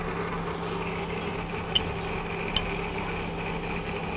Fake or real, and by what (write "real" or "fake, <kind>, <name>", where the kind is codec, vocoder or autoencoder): real